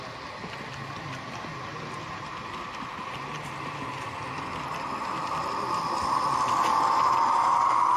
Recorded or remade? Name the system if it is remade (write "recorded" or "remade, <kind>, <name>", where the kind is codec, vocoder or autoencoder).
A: recorded